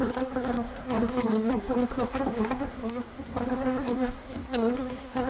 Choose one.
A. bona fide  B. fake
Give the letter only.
B